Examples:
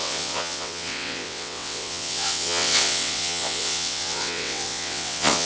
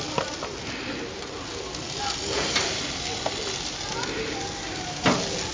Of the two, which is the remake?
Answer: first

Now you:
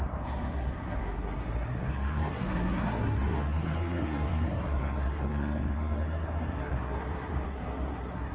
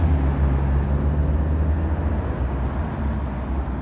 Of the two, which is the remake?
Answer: first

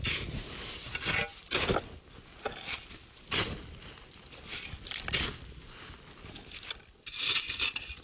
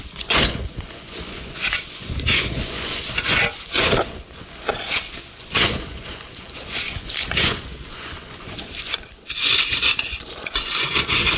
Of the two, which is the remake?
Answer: second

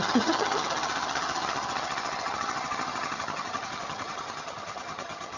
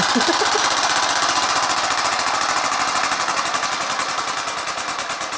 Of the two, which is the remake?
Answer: first